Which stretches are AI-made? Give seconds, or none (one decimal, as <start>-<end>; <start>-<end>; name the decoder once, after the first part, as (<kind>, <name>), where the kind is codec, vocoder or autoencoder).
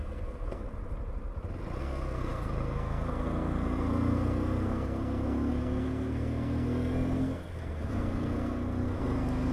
0.0-0.7 (codec, SNAC); 1.8-9.5